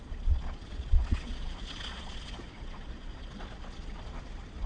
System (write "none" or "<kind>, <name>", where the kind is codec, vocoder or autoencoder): vocoder, Vocos